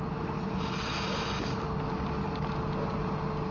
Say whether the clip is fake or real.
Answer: real